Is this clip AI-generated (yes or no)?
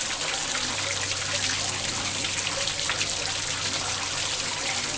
no